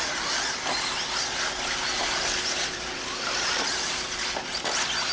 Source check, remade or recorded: recorded